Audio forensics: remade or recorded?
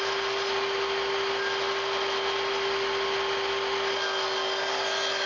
recorded